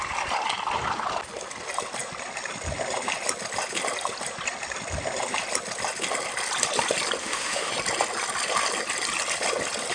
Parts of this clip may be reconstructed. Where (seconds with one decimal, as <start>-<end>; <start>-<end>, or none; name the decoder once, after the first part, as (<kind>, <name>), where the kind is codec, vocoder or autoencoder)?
7.2-7.7 (autoencoder, DAC-VAE)

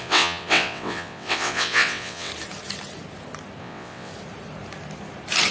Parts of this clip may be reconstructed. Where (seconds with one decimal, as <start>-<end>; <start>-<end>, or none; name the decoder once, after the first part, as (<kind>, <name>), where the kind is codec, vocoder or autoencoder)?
0.0-2.3 (vocoder, WaveNeXt); 3.6-4.1